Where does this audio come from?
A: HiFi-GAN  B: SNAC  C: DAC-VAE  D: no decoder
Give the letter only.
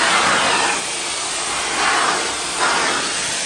D